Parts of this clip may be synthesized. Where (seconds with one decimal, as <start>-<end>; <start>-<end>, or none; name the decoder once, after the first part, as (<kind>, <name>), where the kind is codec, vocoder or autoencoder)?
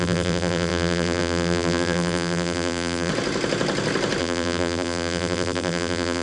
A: 0.0-3.1 (vocoder, BigVGAN v2); 4.2-6.2